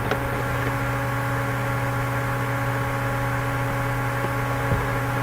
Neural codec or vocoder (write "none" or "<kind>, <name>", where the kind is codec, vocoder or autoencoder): none